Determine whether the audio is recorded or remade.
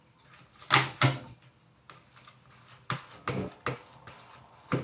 recorded